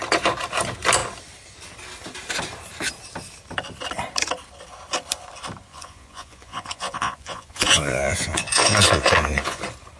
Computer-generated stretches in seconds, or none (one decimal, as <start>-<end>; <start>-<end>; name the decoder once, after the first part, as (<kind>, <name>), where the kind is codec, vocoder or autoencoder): 5.7-9.6 (vocoder, Vocos)